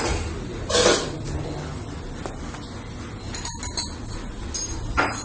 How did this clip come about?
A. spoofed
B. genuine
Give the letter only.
B